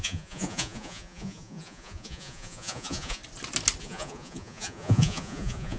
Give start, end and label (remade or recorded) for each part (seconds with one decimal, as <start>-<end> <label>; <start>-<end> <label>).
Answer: 0.0-3.2 remade; 3.2-3.8 recorded; 3.8-5.8 remade